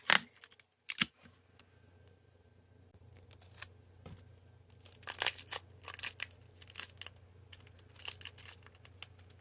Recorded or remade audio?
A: recorded